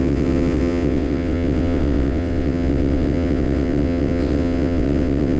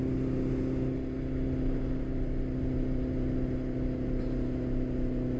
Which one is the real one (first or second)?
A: second